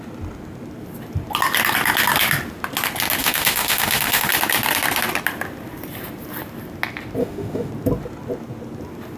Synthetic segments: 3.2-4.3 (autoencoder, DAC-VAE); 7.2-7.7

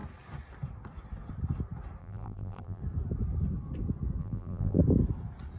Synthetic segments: 2.0-2.8 (vocoder, BigVGAN v2); 4.2-4.8

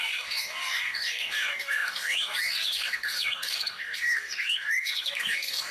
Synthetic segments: 0.0-5.7 (codec, DAC)